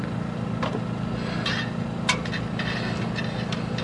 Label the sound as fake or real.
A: real